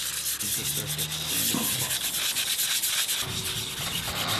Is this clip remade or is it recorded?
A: recorded